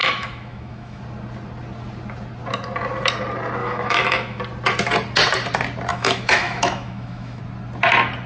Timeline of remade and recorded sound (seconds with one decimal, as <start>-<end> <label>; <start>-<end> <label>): 0.0-1.0 remade; 1.0-3.6 recorded; 3.6-4.4 remade; 4.4-5.9 recorded; 5.9-7.4 remade; 7.4-8.3 recorded